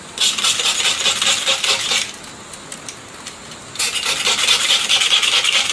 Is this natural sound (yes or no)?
yes